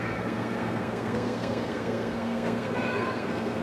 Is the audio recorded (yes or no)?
no